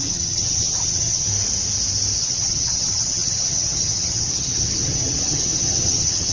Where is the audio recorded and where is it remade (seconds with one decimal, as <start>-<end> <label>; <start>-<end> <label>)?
0.0-1.3 remade; 1.3-2.2 recorded; 2.2-6.3 remade